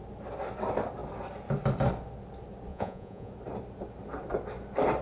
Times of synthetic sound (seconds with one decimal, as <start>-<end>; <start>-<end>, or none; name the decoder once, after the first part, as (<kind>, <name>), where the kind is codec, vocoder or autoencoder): 2.7-3.3 (vocoder, Vocos)